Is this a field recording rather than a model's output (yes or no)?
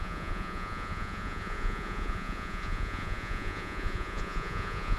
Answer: no